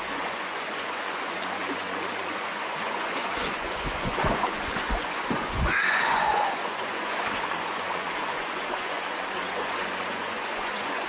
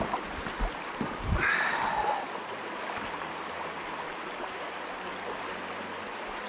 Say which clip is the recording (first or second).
second